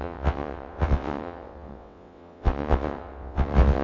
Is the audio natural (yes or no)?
no